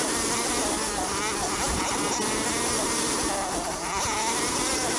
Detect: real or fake real